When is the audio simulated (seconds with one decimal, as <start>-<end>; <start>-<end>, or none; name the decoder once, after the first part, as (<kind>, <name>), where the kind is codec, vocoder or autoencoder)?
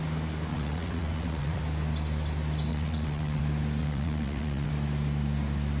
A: 0.5-1.6 (vocoder, WaveNeXt); 2.7-3.4; 3.8-4.7